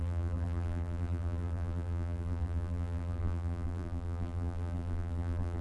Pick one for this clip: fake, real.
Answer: fake